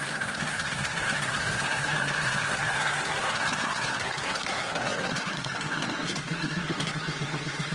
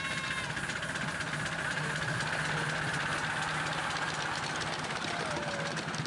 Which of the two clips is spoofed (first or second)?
first